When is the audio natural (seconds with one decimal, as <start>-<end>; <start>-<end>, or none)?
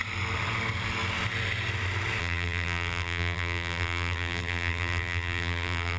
0.0-2.2